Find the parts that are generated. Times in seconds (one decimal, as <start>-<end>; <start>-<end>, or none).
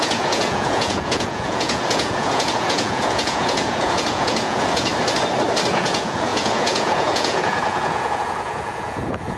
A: 0.0-4.9; 5.7-9.4